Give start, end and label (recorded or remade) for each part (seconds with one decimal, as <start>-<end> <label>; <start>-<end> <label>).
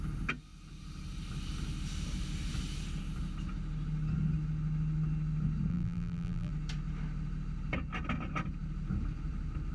0.0-5.7 recorded; 5.7-6.5 remade; 6.5-9.7 recorded